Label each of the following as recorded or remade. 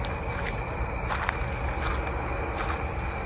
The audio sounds recorded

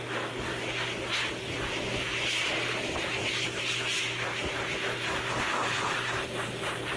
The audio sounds recorded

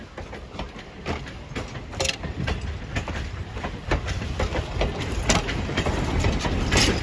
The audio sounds recorded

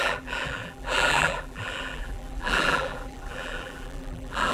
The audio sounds remade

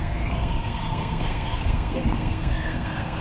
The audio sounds remade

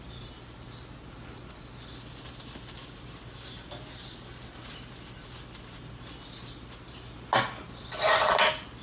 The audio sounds recorded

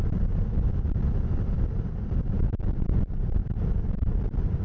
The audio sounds recorded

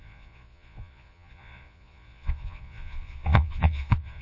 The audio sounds remade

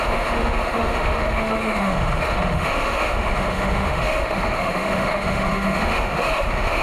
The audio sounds remade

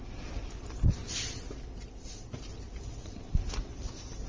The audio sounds recorded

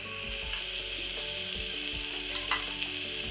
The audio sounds recorded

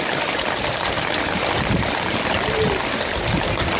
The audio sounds recorded